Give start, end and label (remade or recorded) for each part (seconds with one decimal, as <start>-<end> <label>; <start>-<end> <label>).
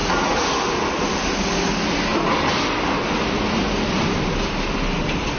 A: 0.0-5.4 recorded